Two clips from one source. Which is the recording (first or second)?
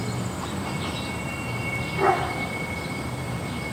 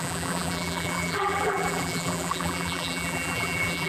first